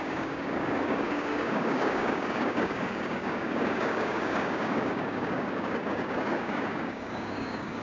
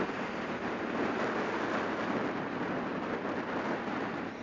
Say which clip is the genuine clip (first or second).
second